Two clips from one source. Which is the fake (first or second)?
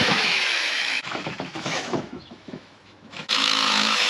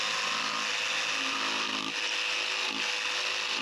first